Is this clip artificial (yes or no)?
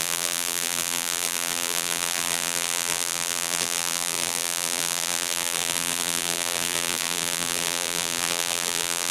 yes